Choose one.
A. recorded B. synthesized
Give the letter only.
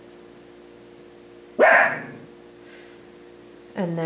A